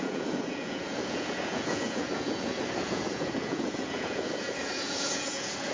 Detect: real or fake fake